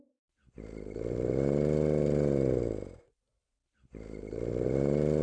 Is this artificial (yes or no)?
no